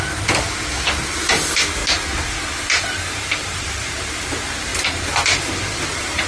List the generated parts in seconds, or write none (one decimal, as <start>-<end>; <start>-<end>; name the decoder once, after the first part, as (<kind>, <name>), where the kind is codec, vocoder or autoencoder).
0.0-1.8 (vocoder, BigVGAN v2); 3.1-4.7; 5.4-6.3